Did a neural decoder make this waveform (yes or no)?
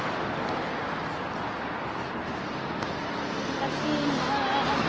no